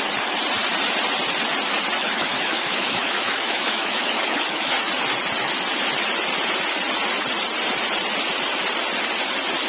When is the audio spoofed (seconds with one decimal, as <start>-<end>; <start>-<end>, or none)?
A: 2.0-4.7